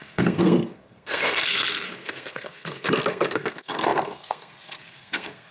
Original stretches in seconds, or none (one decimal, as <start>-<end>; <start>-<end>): none